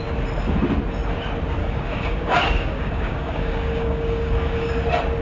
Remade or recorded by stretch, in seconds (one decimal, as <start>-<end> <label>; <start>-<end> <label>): 0.0-1.6 recorded; 1.6-4.7 remade; 4.7-5.2 recorded